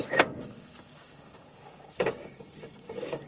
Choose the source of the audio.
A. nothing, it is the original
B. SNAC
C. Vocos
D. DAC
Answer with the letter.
D